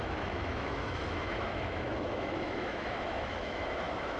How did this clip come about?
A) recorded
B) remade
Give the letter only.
B